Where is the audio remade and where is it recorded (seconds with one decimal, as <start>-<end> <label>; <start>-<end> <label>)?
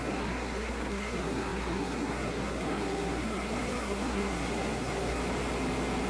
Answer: 0.0-5.2 remade; 5.2-6.1 recorded